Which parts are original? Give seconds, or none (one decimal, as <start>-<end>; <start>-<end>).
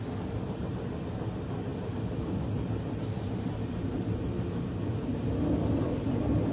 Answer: 0.0-6.5